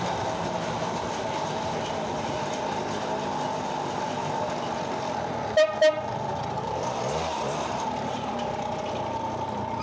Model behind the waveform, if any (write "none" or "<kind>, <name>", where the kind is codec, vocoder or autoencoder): none